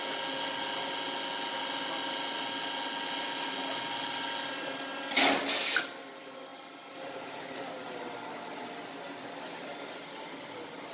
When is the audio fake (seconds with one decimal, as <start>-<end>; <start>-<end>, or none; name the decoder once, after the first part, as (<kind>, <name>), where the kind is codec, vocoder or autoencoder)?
6.5-7.7 (vocoder, BigVGAN v2)